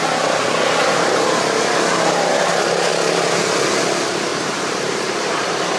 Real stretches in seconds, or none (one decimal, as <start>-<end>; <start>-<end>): 0.0-1.9; 2.5-4.3